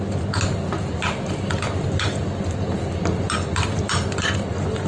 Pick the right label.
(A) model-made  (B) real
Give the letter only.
B